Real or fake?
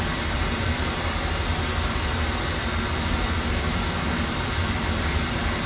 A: real